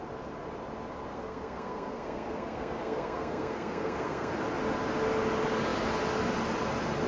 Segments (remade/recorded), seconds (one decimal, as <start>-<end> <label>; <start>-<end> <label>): 0.0-1.1 recorded; 1.1-4.3 remade; 4.3-7.1 recorded

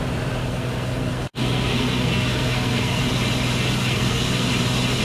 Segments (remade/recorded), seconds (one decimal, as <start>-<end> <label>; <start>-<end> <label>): 0.0-0.4 recorded; 0.4-3.0 remade; 3.0-3.8 recorded; 3.8-4.5 remade; 4.5-5.0 recorded

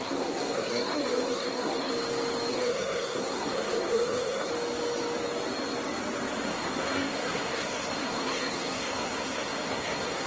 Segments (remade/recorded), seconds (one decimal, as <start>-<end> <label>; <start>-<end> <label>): 0.0-1.9 remade; 1.9-2.5 recorded; 2.5-4.5 remade; 4.5-6.5 recorded; 6.5-10.3 remade

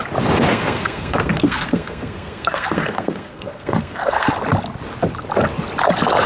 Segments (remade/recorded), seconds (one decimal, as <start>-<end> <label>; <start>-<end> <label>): 0.0-0.5 recorded; 0.5-4.3 remade; 4.3-6.3 recorded